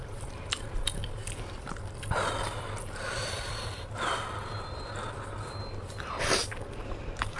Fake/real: fake